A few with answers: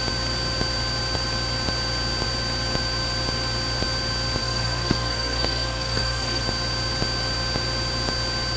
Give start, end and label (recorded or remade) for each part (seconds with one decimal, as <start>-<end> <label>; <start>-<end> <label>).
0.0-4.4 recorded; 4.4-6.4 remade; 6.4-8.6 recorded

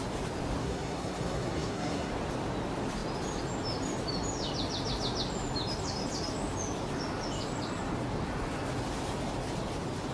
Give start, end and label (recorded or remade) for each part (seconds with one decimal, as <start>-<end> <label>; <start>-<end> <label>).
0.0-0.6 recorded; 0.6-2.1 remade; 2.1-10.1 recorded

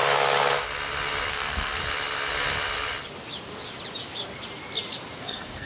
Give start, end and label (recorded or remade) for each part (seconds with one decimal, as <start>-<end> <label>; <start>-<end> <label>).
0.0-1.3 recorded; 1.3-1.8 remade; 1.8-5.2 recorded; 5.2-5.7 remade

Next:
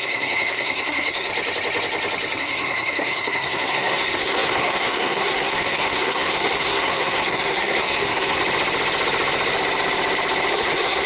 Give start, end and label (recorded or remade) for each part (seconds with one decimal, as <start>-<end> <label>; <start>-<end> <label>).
0.0-1.3 remade; 1.3-2.4 recorded; 2.4-8.4 remade; 8.4-10.5 recorded; 10.5-11.1 remade

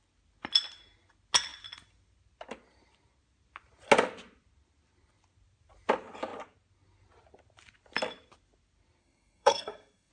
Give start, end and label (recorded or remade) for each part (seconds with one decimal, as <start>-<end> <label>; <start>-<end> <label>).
0.0-9.0 recorded; 9.0-10.1 remade

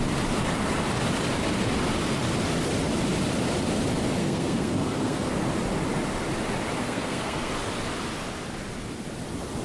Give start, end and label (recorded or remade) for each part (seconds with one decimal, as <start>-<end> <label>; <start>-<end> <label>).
0.0-4.2 recorded; 4.2-5.3 remade; 5.3-6.8 recorded; 6.8-7.5 remade; 7.5-9.6 recorded

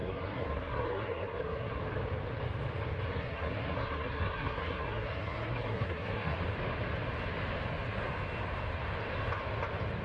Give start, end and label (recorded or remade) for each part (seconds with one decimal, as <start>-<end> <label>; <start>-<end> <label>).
0.0-1.8 remade; 1.8-3.1 recorded; 3.1-6.4 remade; 6.4-10.0 recorded

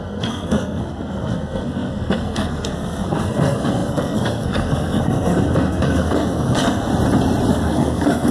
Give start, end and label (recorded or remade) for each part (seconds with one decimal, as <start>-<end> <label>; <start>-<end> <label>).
0.0-6.9 remade; 6.9-7.5 recorded; 7.5-8.3 remade